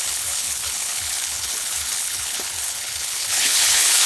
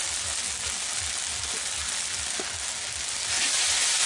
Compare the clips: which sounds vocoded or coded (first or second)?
first